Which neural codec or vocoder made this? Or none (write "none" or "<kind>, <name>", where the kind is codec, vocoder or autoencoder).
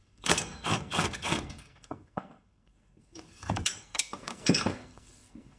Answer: codec, SNAC